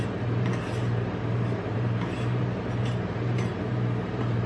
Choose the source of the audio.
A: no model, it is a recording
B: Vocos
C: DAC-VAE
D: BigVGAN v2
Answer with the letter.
D